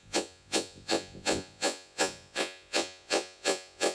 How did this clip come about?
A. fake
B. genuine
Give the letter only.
A